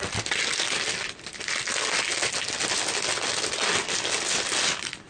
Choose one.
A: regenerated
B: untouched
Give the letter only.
B